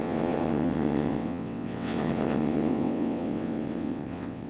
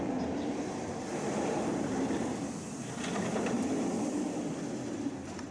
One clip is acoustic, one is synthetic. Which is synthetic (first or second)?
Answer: first